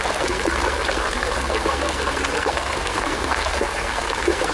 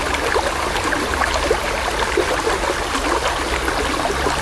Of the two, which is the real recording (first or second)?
second